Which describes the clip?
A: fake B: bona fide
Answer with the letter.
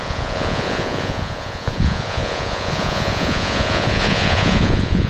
A